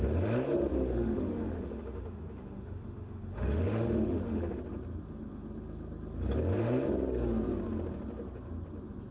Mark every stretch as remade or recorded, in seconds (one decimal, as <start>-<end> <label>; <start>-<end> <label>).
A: 0.0-0.7 recorded; 0.7-4.6 remade; 4.6-9.1 recorded